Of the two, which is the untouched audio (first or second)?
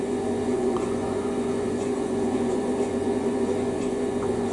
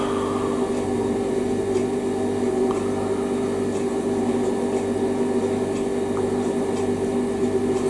second